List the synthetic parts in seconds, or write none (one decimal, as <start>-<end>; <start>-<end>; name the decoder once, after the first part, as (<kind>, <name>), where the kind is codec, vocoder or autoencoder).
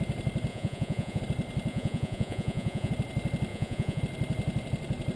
0.5-1.2 (vocoder, Vocos); 1.7-2.9; 3.5-4.0